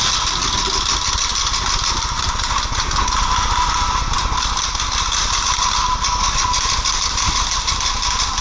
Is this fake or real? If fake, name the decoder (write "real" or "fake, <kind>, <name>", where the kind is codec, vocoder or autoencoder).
real